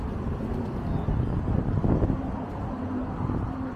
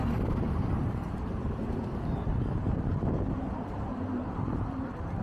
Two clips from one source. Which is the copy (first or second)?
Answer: second